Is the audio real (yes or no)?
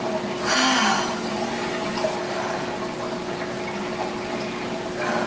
yes